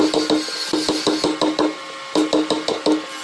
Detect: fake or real real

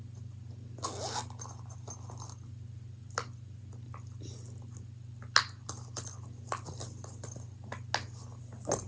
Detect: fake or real real